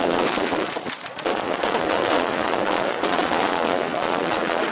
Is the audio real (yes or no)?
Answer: no